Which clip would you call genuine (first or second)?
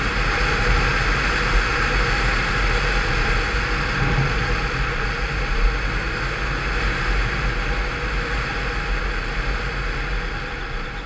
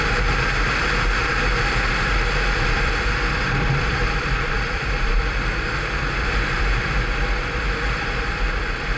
first